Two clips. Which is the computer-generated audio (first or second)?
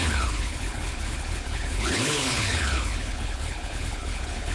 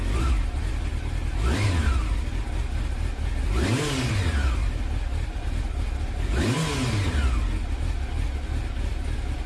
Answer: first